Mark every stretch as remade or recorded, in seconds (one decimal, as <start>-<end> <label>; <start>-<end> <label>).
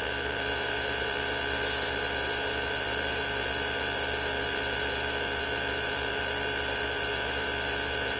0.0-8.2 remade